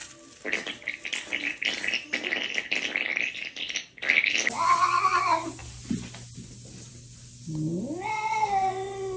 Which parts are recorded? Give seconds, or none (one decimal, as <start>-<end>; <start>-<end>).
0.0-8.1; 8.7-9.2